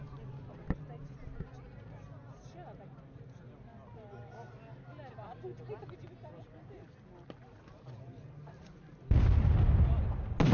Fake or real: real